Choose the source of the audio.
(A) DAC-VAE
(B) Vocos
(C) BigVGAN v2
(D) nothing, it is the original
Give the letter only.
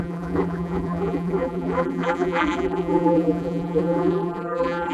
C